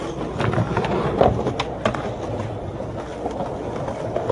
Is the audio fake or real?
real